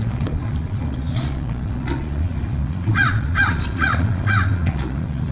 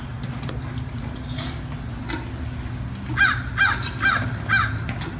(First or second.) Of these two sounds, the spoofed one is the first